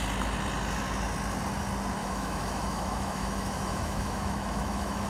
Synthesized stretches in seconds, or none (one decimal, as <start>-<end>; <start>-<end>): 2.0-5.1